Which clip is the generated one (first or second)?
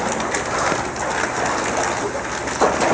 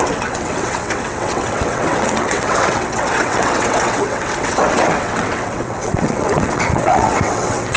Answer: second